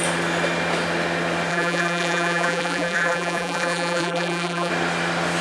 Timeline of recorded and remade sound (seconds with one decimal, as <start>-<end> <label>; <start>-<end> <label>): 0.0-1.5 recorded; 1.5-4.7 remade; 4.7-5.4 recorded